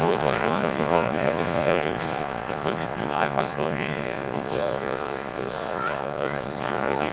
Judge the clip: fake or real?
fake